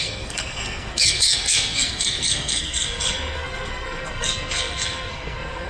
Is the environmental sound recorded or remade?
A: remade